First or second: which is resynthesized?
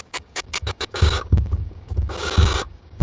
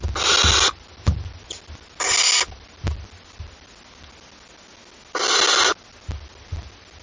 first